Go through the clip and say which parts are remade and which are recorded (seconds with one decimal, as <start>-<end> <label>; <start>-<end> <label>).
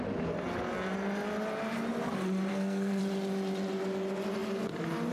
0.0-2.5 recorded; 2.5-3.0 remade; 3.0-5.1 recorded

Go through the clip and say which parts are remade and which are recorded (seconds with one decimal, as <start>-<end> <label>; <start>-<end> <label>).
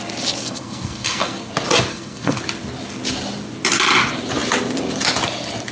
0.0-0.4 recorded; 0.4-1.5 remade; 1.5-1.9 recorded; 1.9-2.4 remade; 2.4-5.7 recorded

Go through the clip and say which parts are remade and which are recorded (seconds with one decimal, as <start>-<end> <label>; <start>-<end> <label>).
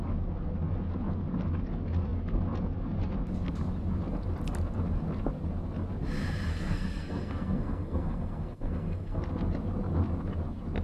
0.0-6.5 recorded; 6.5-9.2 remade; 9.2-10.8 recorded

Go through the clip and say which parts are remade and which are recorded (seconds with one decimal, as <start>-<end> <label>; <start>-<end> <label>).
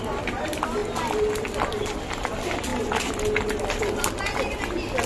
0.0-5.1 recorded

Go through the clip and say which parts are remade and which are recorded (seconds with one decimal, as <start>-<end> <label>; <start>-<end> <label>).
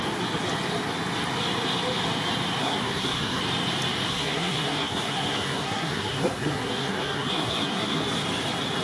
0.0-2.6 recorded; 2.6-3.4 remade; 3.4-4.1 recorded; 4.1-8.0 remade; 8.0-8.8 recorded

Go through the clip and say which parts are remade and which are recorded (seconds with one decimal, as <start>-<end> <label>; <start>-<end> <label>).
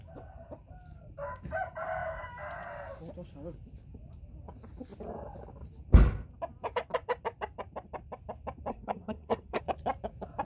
0.0-8.7 recorded; 8.7-9.6 remade; 9.6-10.4 recorded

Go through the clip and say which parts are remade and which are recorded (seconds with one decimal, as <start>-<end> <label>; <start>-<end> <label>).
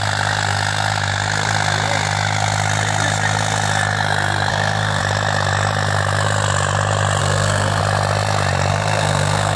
0.0-4.5 recorded; 4.5-5.0 remade; 5.0-7.2 recorded; 7.2-7.8 remade; 7.8-8.7 recorded; 8.7-9.6 remade